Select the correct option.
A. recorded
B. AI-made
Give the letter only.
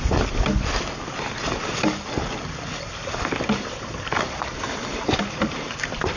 A